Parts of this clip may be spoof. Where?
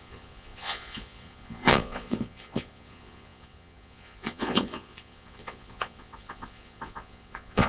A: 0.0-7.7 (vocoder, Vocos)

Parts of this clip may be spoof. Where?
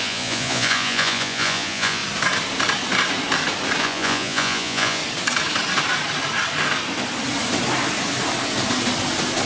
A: 0.0-2.0 (vocoder, Vocos); 3.8-5.0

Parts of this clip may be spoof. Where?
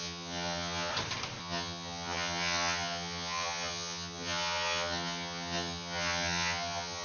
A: 0.0-0.9 (vocoder, HiFi-GAN); 1.4-7.0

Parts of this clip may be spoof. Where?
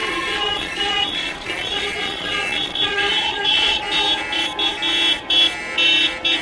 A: 0.0-3.8 (vocoder, Vocos)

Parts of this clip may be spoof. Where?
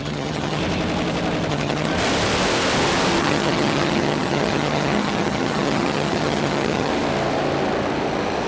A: 0.0-0.6 (vocoder, HiFi-GAN); 1.5-1.9; 3.2-6.9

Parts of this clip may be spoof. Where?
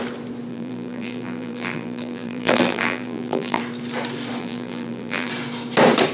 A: 0.5-3.6 (vocoder, BigVGAN v2); 4.4-5.3